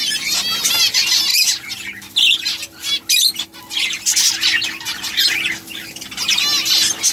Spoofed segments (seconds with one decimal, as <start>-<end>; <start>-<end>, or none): none